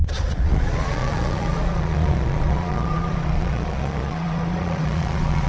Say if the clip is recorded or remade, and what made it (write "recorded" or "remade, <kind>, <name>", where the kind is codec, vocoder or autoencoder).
remade, vocoder, Vocos